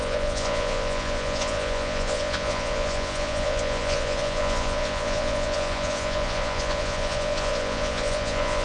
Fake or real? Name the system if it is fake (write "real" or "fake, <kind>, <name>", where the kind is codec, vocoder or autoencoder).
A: fake, vocoder, Vocos